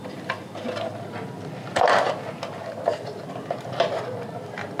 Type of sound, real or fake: real